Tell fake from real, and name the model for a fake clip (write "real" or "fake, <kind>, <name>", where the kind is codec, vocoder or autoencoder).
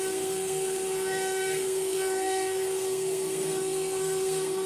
fake, codec, SNAC